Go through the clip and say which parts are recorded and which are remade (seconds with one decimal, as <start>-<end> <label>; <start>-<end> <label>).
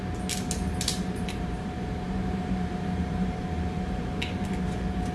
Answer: 0.0-0.9 recorded; 0.9-4.0 remade; 4.0-5.1 recorded